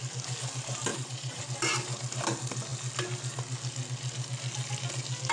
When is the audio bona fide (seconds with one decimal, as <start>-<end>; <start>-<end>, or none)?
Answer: 0.0-0.9; 1.4-5.3